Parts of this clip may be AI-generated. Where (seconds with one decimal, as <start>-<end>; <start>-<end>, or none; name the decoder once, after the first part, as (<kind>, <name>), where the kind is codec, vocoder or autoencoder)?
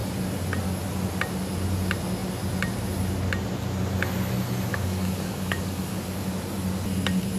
4.7-6.0 (codec, DAC)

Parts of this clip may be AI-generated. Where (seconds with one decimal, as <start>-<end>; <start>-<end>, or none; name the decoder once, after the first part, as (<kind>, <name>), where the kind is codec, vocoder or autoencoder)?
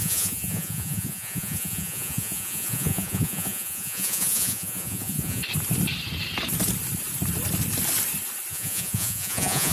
0.0-5.4 (vocoder, Vocos); 8.5-9.7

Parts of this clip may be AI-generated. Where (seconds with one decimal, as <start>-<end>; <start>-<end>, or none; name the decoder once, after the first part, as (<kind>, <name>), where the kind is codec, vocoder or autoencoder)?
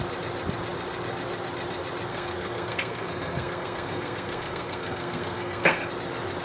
2.1-5.9 (codec, SNAC)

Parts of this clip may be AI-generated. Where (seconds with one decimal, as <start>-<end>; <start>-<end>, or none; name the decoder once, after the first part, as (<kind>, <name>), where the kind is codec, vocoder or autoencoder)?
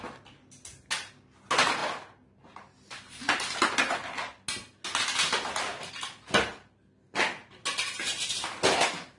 none